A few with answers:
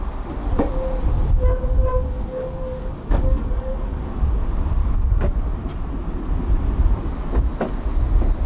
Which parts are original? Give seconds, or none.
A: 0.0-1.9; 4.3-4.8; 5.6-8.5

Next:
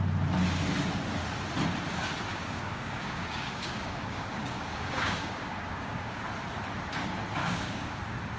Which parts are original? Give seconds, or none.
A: 0.0-2.3; 6.2-7.4; 8.0-8.4

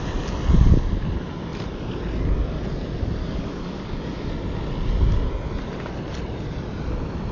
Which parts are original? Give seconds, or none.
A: 0.0-3.2; 4.3-7.3

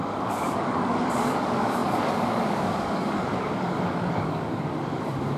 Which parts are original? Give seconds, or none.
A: none